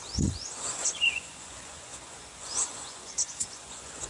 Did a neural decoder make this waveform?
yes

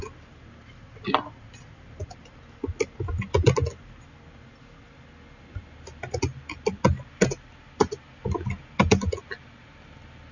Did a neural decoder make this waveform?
no